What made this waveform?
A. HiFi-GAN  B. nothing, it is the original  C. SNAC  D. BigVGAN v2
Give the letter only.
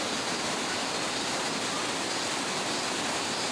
B